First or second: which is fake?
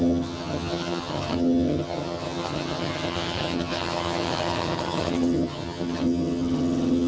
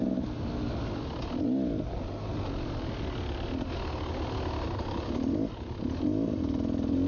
first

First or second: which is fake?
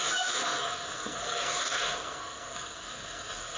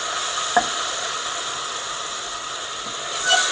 first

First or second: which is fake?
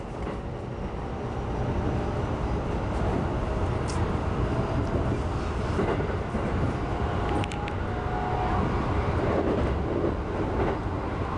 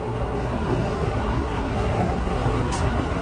second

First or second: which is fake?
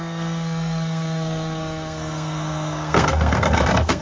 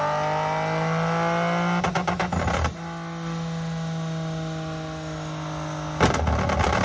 first